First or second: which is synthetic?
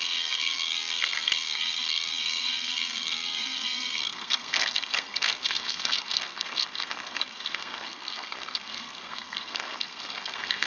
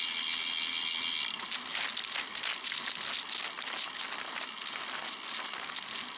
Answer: first